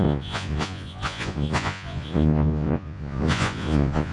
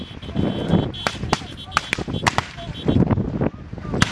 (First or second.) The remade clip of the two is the first